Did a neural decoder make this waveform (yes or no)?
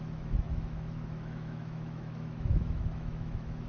yes